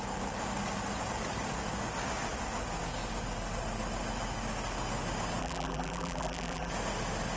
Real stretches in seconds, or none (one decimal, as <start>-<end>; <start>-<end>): 0.0-5.4; 6.7-7.4